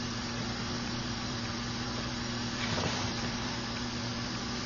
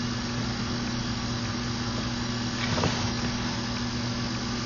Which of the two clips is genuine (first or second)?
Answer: second